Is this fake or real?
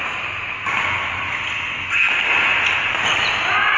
real